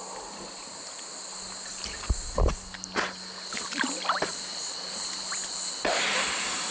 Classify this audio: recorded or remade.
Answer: recorded